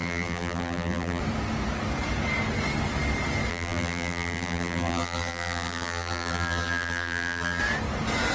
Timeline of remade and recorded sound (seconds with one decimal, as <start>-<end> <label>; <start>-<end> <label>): 0.0-1.2 remade; 1.2-3.5 recorded; 3.5-7.6 remade; 7.6-8.3 recorded

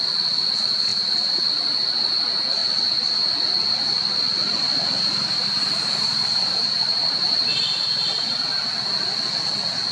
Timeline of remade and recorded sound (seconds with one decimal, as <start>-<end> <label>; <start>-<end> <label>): 0.0-4.9 recorded; 4.9-8.6 remade; 8.6-9.9 recorded

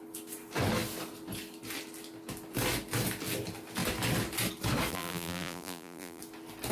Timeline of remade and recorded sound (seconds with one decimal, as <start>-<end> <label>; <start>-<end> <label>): 0.0-4.9 recorded; 4.9-6.2 remade; 6.2-6.7 recorded

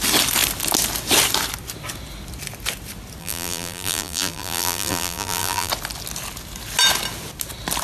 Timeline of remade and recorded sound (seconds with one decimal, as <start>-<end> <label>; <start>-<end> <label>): 0.0-3.2 recorded; 3.2-5.7 remade; 5.7-7.8 recorded

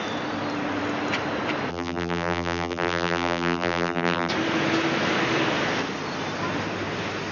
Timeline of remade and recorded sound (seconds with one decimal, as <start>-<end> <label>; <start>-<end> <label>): 0.0-1.7 recorded; 1.7-4.3 remade; 4.3-7.3 recorded

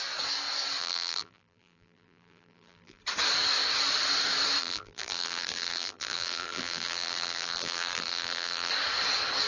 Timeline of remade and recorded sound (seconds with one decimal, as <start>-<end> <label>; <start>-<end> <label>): 0.0-0.8 recorded; 0.8-3.0 remade; 3.0-4.6 recorded; 4.6-8.7 remade; 8.7-9.5 recorded

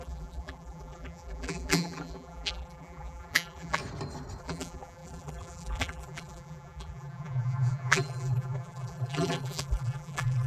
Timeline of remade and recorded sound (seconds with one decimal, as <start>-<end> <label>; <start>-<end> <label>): 0.0-3.8 remade; 3.8-4.4 recorded; 4.4-10.5 remade